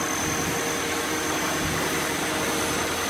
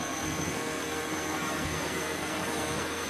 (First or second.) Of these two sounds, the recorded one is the first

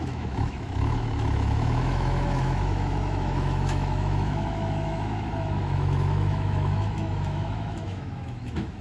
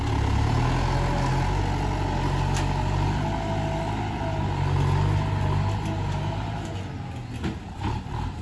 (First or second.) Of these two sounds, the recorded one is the second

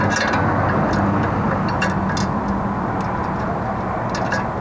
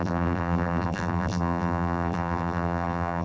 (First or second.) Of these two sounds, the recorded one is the first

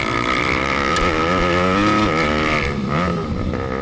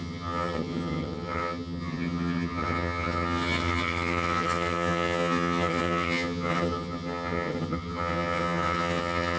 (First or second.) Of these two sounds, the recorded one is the first